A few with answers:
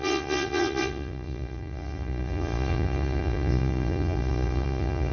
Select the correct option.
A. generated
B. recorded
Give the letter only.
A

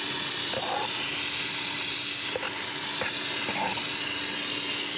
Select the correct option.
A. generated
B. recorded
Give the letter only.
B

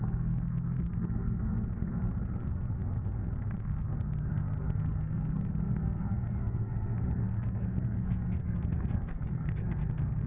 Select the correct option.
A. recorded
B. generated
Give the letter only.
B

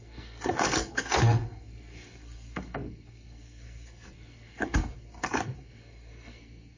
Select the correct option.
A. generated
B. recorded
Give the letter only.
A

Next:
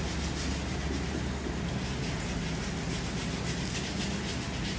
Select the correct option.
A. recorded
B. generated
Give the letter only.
A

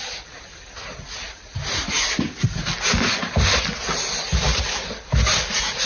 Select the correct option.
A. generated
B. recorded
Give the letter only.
B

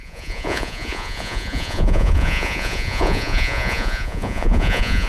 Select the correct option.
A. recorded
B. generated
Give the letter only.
B